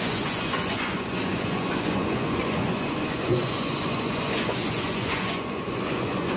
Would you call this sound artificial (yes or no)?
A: yes